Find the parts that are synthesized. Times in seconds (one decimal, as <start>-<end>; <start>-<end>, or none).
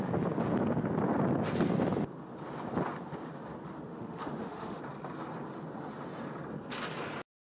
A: 3.9-4.8